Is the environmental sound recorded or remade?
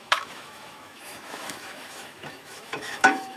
remade